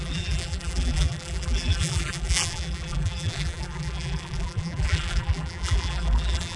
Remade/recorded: remade